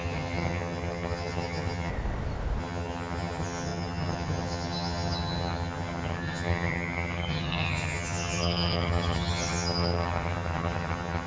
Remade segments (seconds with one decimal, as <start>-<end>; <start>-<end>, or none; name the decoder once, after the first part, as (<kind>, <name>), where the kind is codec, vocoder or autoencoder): 0.0-1.9 (vocoder, HiFi-GAN); 2.6-11.3